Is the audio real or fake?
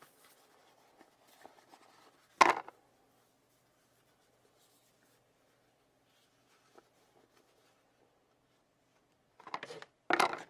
real